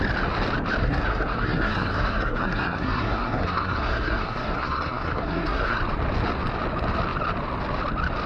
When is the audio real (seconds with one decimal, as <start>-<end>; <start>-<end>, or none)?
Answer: 0.0-0.8; 5.8-8.3